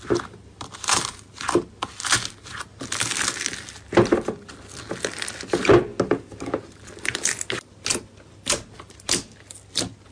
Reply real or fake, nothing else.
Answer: real